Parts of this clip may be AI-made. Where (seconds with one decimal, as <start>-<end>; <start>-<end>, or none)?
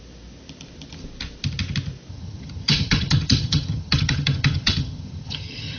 2.1-5.8